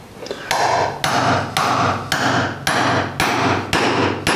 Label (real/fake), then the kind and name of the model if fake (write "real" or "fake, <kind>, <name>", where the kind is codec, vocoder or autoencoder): real